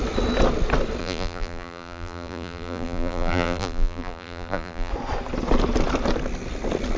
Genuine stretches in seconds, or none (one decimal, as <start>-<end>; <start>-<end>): 0.0-1.0; 4.9-7.0